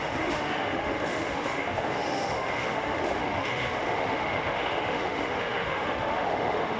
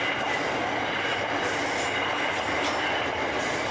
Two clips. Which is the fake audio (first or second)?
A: first